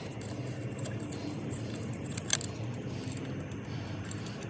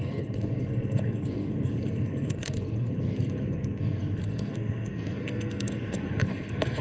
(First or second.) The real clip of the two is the first